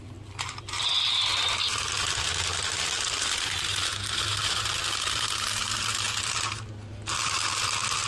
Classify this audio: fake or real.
real